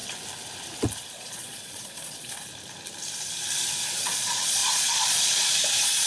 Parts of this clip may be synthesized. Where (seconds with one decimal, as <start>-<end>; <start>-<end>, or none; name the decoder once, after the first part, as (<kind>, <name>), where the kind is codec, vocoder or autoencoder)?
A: 1.1-2.5 (vocoder, Vocos); 3.9-6.1